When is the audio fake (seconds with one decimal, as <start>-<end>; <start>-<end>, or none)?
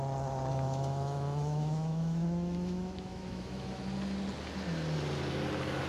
0.5-3.8